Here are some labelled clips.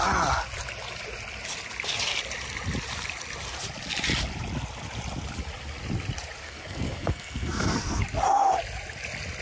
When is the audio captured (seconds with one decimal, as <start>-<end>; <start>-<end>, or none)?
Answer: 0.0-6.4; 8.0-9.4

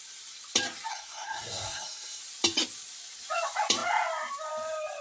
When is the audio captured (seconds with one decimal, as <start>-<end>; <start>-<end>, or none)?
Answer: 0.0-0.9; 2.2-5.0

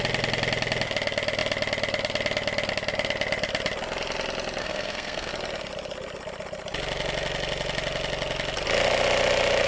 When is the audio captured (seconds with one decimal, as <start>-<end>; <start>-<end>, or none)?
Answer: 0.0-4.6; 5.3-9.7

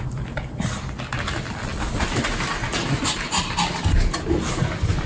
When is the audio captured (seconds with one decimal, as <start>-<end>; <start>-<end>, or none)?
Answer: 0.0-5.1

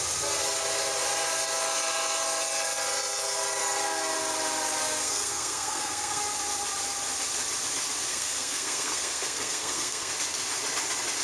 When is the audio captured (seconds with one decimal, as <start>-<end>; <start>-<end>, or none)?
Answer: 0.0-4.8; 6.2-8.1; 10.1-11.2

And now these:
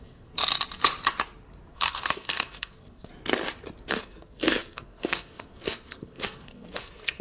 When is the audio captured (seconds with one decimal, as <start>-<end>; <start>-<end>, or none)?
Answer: 0.4-1.7; 3.1-3.9

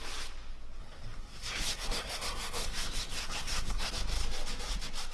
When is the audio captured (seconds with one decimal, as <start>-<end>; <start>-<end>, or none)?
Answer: 0.0-0.8; 3.9-5.1